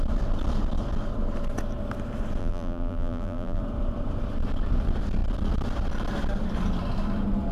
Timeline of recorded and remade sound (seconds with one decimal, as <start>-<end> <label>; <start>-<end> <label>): 0.0-2.4 recorded; 2.4-3.6 remade; 3.6-7.5 recorded